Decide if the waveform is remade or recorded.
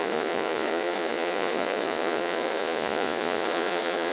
remade